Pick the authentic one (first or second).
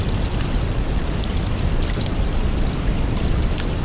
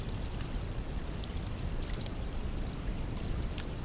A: first